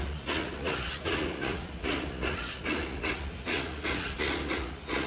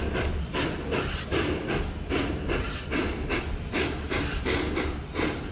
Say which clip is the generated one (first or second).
first